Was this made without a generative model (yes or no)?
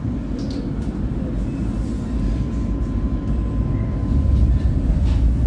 yes